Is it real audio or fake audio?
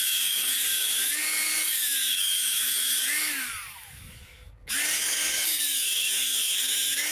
fake